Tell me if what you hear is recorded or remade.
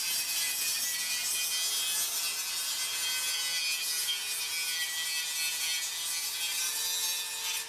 recorded